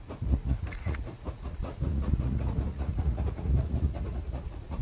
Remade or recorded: remade